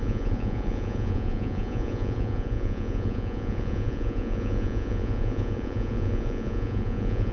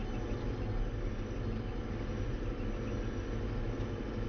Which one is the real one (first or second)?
second